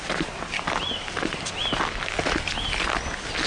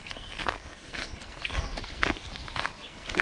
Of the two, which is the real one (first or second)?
first